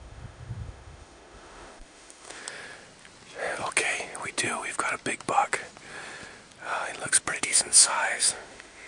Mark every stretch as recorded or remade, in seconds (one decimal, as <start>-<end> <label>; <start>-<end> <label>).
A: 0.0-2.4 remade; 2.4-7.4 recorded; 7.4-8.9 remade